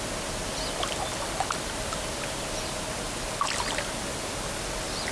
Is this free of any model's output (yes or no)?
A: yes